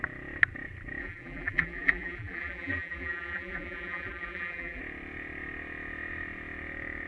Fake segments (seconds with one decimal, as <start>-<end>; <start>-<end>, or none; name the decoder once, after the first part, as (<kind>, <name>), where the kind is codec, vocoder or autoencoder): 1.0-4.8 (vocoder, BigVGAN v2)